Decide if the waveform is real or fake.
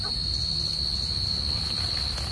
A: real